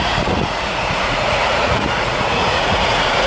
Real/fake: fake